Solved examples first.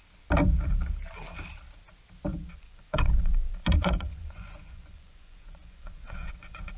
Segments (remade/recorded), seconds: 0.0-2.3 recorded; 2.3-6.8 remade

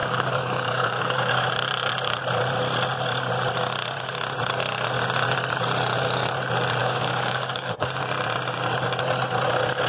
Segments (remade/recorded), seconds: 0.0-1.5 remade; 1.5-6.8 recorded; 6.8-7.9 remade; 7.9-9.9 recorded

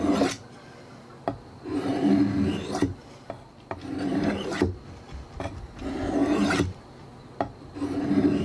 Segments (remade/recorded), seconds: 0.0-6.2 remade; 6.2-7.4 recorded; 7.4-8.4 remade

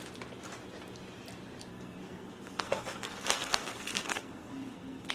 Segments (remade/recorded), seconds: 0.0-1.7 recorded; 1.7-5.1 remade

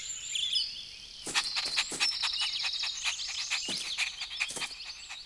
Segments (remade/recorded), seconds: 0.0-5.3 recorded

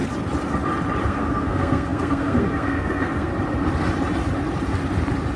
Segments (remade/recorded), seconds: 0.0-1.0 recorded; 1.0-3.3 remade; 3.3-5.4 recorded

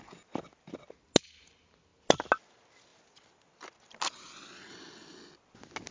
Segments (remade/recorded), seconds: 0.0-5.9 recorded